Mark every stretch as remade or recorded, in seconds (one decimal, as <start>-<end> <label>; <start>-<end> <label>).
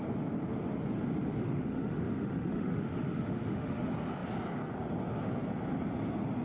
0.0-1.4 recorded; 1.4-3.8 remade; 3.8-6.4 recorded